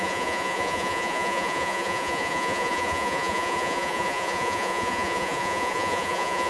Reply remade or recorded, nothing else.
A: remade